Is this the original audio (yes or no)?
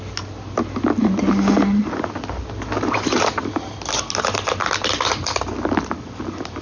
yes